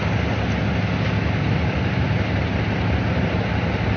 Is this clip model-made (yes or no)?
no